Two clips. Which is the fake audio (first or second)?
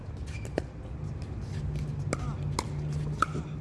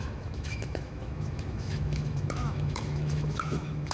second